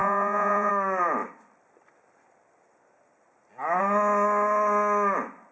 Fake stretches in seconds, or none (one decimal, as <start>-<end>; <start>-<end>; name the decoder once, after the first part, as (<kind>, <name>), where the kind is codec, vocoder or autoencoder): 0.0-0.7 (vocoder, Vocos)